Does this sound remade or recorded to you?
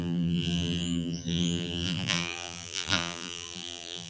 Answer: remade